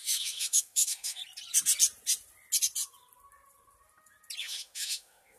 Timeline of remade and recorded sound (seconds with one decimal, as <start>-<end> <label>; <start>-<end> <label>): 0.0-1.2 remade; 1.2-4.4 recorded; 4.4-5.4 remade